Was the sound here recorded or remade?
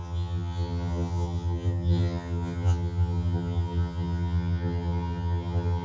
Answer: remade